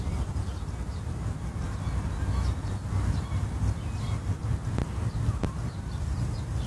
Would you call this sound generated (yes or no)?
no